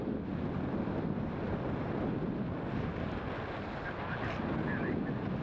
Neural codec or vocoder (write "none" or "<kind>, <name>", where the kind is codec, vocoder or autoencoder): none